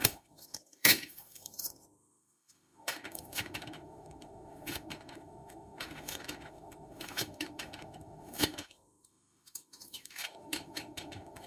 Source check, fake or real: fake